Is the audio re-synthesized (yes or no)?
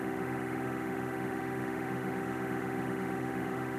yes